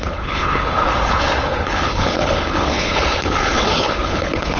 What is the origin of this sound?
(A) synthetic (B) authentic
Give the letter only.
A